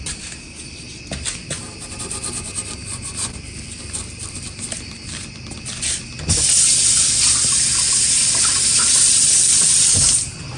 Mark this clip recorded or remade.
recorded